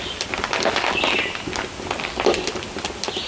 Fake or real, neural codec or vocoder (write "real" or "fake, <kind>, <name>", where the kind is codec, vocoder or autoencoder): real